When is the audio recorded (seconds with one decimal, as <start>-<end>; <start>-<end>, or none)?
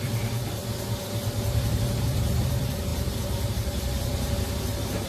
0.6-2.0; 2.9-3.5